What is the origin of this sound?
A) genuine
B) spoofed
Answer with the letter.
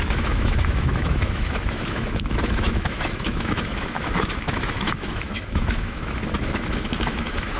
B